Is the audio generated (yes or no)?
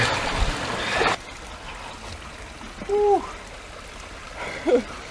no